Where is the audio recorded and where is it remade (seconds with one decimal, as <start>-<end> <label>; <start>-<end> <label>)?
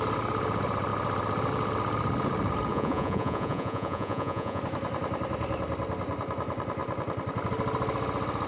0.0-2.7 recorded; 2.7-4.6 remade; 4.6-8.5 recorded